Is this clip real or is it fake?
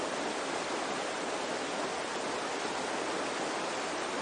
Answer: real